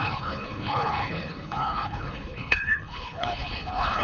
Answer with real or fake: fake